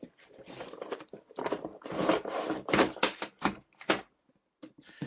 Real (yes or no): no